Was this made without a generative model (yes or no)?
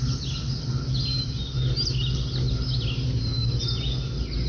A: yes